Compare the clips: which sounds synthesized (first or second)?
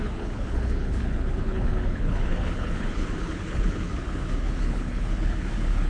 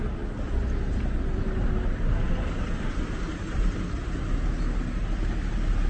first